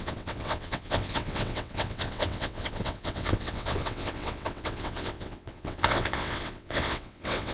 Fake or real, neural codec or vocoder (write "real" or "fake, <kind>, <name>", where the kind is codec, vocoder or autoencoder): fake, vocoder, WaveNeXt